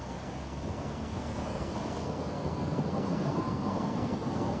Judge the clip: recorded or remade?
remade